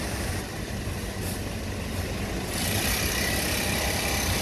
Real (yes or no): yes